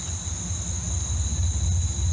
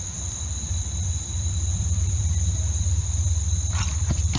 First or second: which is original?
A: first